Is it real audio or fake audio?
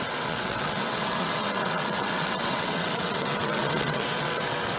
fake